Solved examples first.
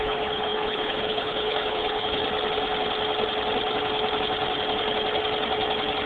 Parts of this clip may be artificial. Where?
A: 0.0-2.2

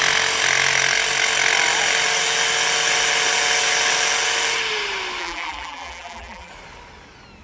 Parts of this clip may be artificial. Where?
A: 5.2-6.5

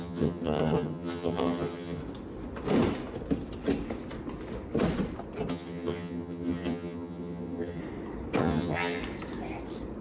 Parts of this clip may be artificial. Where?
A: 0.0-2.0; 5.5-7.8; 8.4-9.0

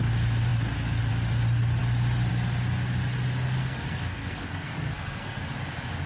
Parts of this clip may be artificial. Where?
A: 3.6-5.4